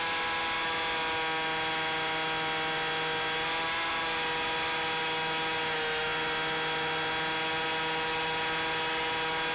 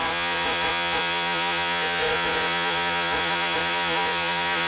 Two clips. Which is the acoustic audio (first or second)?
first